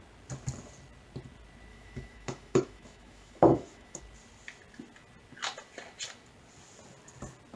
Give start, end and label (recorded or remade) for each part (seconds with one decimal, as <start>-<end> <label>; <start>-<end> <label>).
0.0-1.7 recorded; 1.7-4.0 remade; 4.0-7.6 recorded